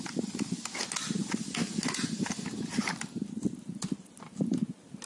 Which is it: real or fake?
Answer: real